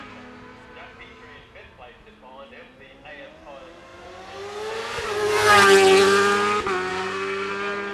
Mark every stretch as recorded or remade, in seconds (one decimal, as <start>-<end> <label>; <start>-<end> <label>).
0.0-6.9 recorded; 6.9-7.5 remade; 7.5-7.9 recorded